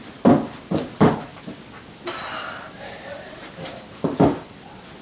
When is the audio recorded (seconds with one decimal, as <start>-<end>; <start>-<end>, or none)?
0.0-5.0